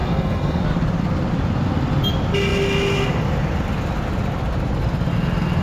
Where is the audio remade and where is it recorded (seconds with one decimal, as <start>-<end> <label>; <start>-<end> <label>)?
0.0-0.6 remade; 0.6-5.6 recorded